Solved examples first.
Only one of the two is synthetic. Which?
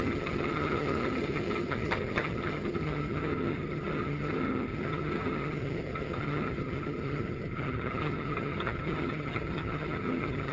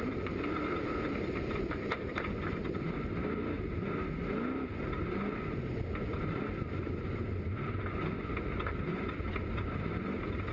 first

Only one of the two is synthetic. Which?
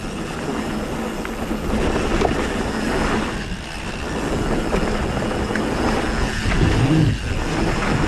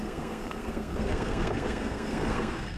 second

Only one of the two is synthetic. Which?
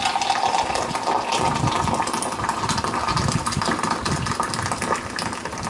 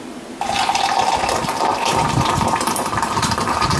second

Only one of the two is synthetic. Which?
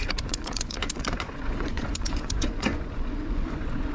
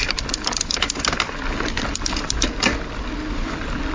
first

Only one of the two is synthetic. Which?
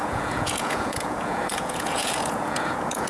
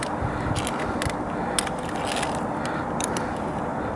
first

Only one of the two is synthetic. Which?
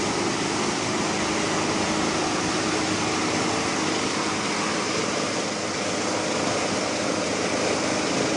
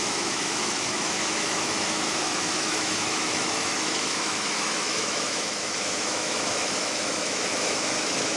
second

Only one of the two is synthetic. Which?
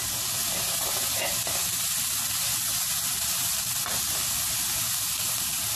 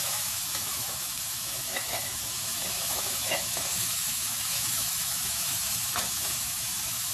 second